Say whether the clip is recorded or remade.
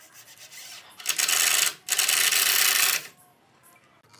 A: recorded